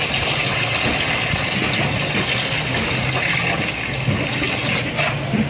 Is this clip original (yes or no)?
yes